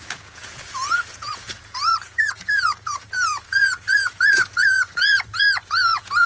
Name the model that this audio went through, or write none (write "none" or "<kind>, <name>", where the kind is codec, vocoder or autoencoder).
vocoder, Vocos